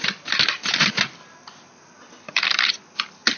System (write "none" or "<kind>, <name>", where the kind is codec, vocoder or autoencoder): none